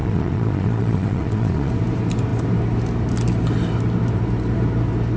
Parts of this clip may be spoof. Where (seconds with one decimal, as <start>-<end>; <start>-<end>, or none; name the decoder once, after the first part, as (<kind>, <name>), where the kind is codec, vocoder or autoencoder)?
0.0-1.7 (vocoder, Vocos)